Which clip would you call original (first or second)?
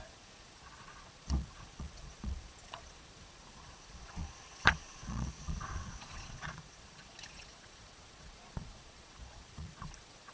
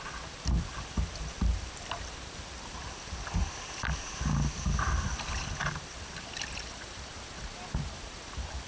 second